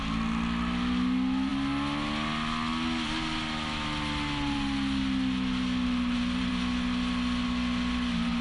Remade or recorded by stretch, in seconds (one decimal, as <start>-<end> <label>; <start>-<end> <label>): 0.0-8.4 recorded